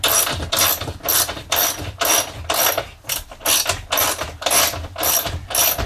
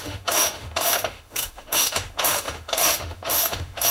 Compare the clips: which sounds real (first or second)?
first